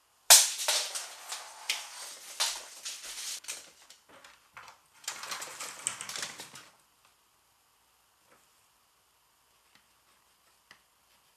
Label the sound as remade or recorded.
recorded